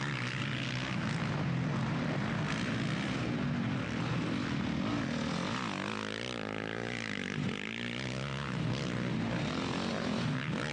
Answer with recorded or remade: recorded